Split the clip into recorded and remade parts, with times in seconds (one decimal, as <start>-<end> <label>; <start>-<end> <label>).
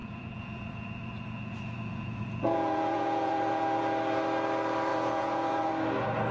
0.0-3.8 remade; 3.8-4.9 recorded; 4.9-5.7 remade; 5.7-6.3 recorded